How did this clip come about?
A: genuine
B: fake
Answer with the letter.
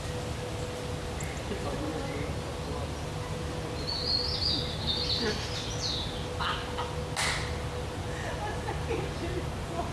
A